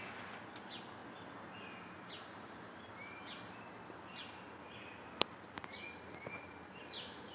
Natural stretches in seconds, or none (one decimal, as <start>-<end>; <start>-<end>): 0.0-7.3